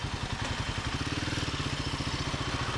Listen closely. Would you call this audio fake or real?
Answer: real